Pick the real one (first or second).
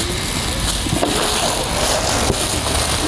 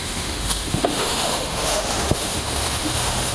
first